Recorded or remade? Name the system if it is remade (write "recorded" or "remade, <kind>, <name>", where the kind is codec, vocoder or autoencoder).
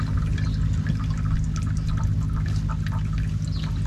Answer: recorded